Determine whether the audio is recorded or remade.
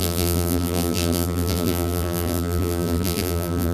remade